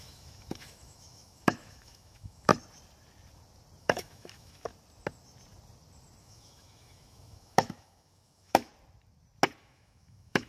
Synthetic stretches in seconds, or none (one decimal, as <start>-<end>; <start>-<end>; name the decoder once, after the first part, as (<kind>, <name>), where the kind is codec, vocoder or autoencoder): 0.0-2.5 (autoencoder, DAC-VAE); 3.8-4.7; 6.2-8.7; 9.6-10.5